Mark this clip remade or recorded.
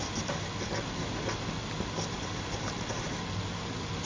recorded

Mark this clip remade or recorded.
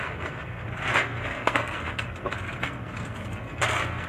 remade